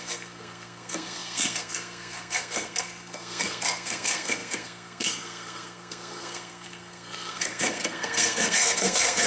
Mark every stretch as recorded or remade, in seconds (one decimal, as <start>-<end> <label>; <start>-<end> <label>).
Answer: 0.0-9.3 remade